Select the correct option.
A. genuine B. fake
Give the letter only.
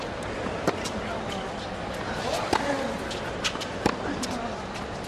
A